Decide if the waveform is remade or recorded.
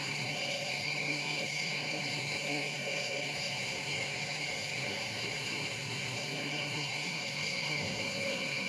remade